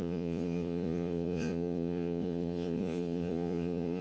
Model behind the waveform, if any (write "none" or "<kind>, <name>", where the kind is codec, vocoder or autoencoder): vocoder, Vocos